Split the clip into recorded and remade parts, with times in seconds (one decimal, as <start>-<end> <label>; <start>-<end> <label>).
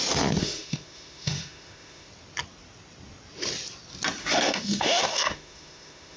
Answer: 0.0-0.4 recorded; 0.4-2.1 remade; 2.1-4.2 recorded; 4.2-6.2 remade